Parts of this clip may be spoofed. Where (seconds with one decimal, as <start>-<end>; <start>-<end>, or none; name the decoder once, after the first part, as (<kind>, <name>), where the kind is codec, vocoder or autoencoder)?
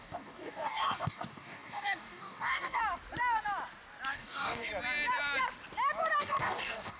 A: 0.0-2.8 (codec, DAC); 4.1-4.7; 6.2-7.0